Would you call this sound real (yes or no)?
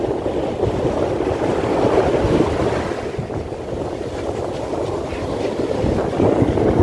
yes